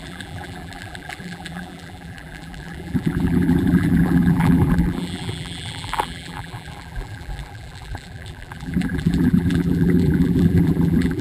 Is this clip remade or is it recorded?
remade